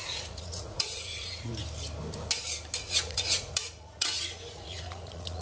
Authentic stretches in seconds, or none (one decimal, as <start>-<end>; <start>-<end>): 1.5-2.8